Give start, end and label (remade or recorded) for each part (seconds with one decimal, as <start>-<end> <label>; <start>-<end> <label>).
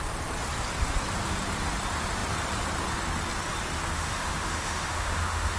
0.0-3.9 recorded; 3.9-5.6 remade